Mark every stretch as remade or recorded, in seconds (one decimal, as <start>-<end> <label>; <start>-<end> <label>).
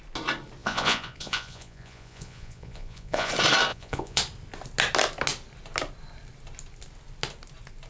0.0-0.6 recorded; 0.6-3.3 remade; 3.3-3.7 recorded; 3.7-4.2 remade; 4.2-7.9 recorded